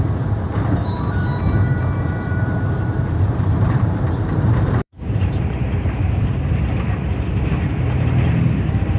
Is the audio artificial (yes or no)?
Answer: yes